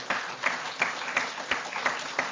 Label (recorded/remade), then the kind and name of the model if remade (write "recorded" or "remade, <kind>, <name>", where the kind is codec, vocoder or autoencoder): recorded